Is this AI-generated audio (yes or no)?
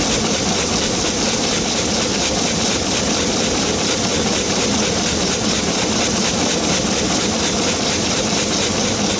no